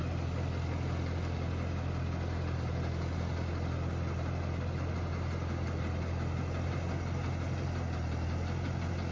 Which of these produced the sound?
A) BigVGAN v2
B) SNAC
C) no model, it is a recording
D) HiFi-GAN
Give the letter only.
C